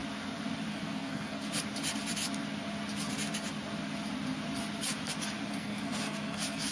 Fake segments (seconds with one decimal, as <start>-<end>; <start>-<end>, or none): 0.7-1.5; 5.5-6.7